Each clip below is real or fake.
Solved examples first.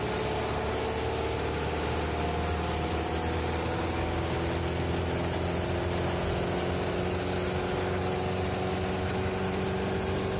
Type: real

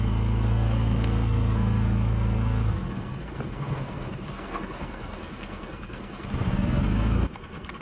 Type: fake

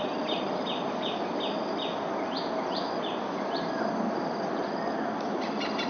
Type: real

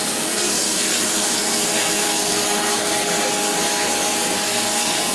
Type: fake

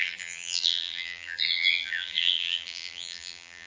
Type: fake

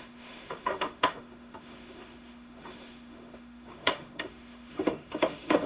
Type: fake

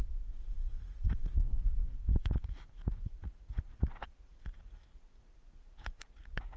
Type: fake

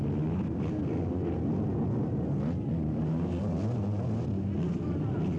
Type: real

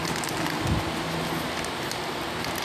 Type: real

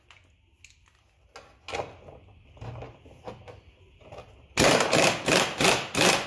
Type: real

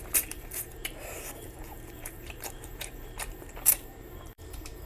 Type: fake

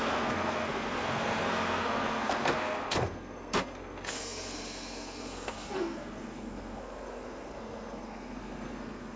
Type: fake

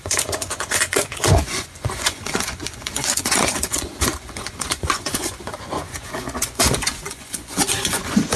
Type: fake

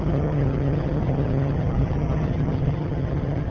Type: fake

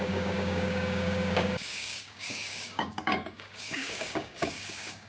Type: fake